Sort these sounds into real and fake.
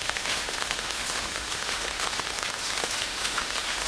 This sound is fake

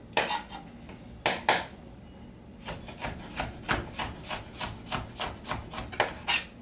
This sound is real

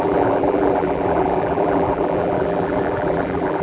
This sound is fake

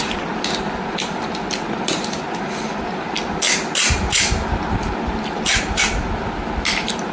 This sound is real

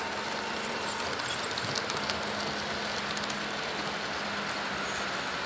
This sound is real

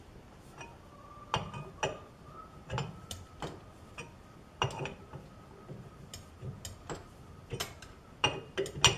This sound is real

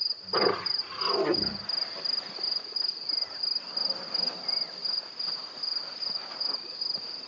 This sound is real